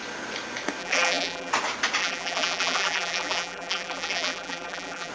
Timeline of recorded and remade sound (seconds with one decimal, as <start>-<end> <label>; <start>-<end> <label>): 0.0-0.8 recorded; 0.8-1.5 remade; 1.5-2.0 recorded; 2.0-5.1 remade